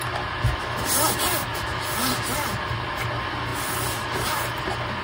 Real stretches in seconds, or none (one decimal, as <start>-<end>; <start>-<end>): 0.0-5.0